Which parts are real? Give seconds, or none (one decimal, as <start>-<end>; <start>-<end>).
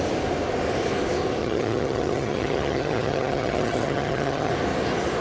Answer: 0.0-1.4; 4.5-5.2